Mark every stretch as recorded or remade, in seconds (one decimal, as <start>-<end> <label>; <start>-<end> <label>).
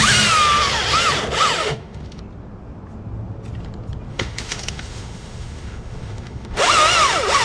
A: 0.0-1.6 recorded; 1.6-2.2 remade; 2.2-4.1 recorded; 4.1-6.7 remade; 6.7-7.4 recorded